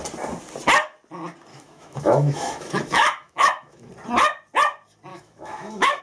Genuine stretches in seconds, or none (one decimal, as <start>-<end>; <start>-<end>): 0.0-1.5; 3.9-5.1